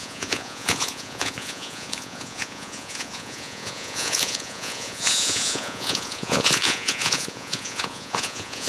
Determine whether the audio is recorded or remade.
remade